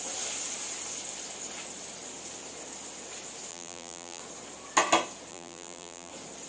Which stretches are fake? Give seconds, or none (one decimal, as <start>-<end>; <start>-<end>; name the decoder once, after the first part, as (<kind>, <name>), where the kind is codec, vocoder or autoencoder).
3.5-4.2 (vocoder, BigVGAN v2); 5.3-6.1

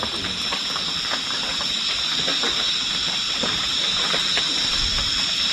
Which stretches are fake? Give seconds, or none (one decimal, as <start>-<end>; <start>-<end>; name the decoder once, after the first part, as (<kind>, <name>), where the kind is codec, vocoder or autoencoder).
0.5-1.6 (vocoder, BigVGAN v2)

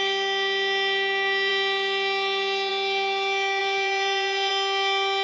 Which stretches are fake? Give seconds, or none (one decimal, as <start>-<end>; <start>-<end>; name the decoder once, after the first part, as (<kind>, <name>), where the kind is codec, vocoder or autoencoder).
3.6-4.5 (vocoder, BigVGAN v2)